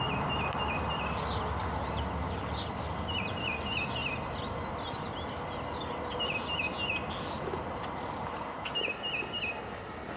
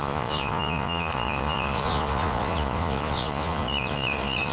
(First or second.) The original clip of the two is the first